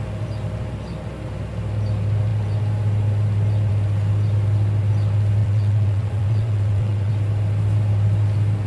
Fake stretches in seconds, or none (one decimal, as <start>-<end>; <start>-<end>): 5.4-7.1